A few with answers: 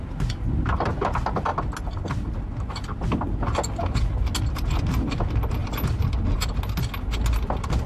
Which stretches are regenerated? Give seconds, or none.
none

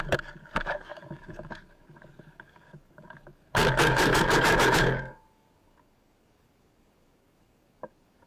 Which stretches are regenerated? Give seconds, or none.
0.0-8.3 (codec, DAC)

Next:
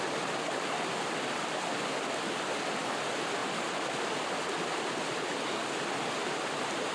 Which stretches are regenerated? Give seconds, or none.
none

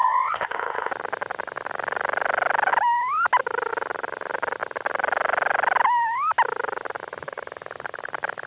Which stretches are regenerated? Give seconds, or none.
0.0-0.9 (codec, ZipCodec)

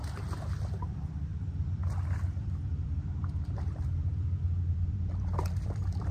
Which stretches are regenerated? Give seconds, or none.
0.0-6.1 (vocoder, BigVGAN v2)

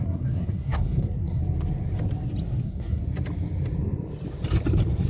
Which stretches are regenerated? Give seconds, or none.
0.0-1.4 (codec, SNAC); 2.6-3.0

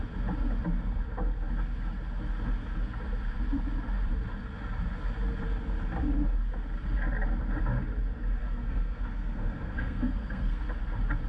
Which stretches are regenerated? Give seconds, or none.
8.4-10.6 (codec, SNAC)

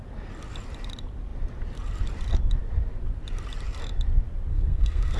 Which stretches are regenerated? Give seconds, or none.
4.5-5.2 (codec, SNAC)